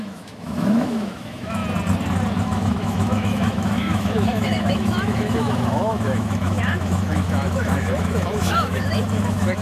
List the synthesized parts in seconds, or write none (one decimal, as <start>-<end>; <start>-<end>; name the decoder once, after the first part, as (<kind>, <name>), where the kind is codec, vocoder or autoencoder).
0.0-1.6 (autoencoder, DAC-VAE); 2.4-9.6